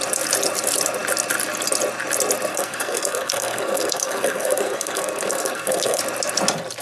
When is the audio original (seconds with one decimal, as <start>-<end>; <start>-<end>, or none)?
0.0-2.5; 6.0-6.8